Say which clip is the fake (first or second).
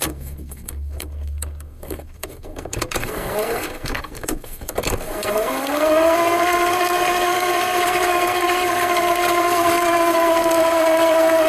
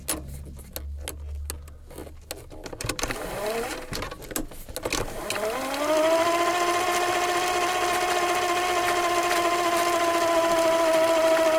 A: first